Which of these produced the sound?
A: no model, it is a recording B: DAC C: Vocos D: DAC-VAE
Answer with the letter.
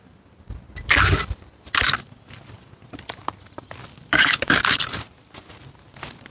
A